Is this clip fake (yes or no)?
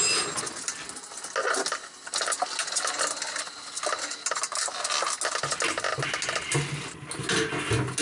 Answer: no